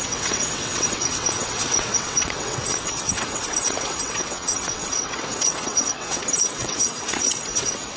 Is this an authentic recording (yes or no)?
no